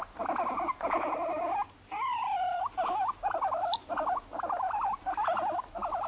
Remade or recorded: remade